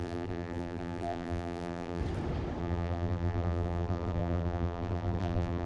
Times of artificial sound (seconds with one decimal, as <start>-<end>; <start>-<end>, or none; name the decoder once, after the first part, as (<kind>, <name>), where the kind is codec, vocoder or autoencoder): 0.0-2.0 (vocoder, BigVGAN v2); 2.6-5.7